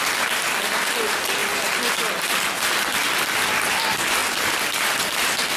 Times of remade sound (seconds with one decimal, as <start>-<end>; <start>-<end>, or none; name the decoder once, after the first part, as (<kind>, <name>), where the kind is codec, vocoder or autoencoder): none